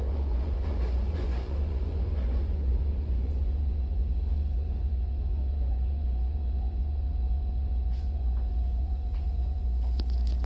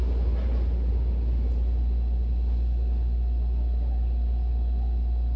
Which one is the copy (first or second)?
first